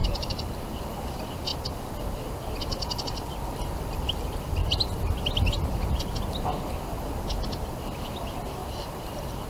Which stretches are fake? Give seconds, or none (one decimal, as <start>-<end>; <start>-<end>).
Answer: 0.0-0.8; 8.6-9.5